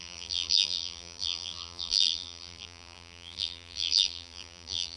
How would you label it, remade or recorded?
remade